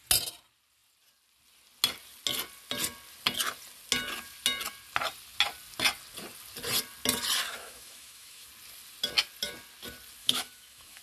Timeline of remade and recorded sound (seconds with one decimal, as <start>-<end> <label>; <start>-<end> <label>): 0.0-7.5 recorded; 7.5-8.5 remade; 8.5-10.2 recorded; 10.2-11.0 remade